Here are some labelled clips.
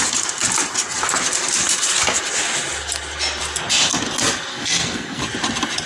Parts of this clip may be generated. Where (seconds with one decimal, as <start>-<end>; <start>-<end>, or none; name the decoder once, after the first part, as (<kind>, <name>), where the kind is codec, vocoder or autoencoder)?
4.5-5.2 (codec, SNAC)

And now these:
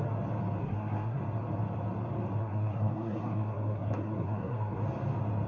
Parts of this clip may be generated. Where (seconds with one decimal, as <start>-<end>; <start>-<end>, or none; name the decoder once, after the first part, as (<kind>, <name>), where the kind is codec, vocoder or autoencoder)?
0.6-1.2 (codec, SNAC); 2.4-4.8

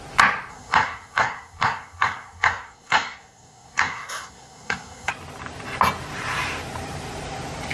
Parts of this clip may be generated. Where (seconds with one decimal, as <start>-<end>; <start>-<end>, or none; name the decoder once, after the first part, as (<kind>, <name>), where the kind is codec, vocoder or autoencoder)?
0.5-5.1 (codec, SNAC)